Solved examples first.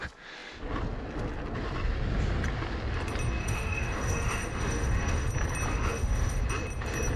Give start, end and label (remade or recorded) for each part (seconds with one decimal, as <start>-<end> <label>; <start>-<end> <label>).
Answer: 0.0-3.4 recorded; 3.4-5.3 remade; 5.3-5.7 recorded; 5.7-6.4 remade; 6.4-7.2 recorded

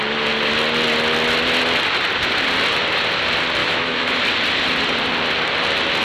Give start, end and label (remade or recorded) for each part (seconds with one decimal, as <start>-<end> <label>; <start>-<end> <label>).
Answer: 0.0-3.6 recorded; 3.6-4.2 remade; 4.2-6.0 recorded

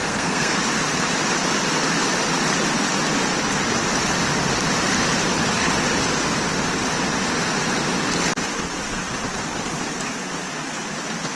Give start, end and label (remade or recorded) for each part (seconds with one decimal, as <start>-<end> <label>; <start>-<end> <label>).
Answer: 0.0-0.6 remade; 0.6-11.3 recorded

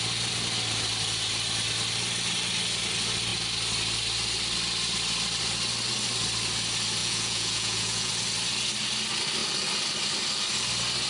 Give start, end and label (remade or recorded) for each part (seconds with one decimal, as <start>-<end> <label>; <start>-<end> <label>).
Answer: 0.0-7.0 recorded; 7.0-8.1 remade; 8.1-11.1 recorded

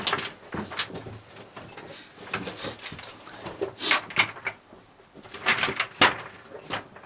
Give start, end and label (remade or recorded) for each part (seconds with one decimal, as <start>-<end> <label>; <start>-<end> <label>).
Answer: 0.0-7.1 recorded

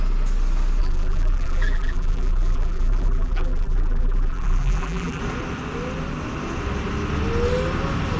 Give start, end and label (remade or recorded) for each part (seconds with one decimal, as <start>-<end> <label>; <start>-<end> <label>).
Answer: 0.0-0.8 recorded; 0.8-5.2 remade; 5.2-8.2 recorded